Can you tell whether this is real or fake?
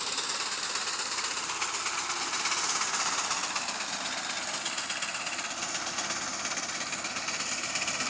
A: real